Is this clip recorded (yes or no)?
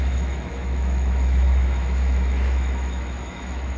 no